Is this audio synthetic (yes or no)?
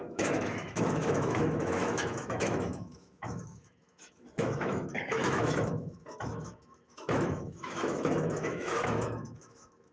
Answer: yes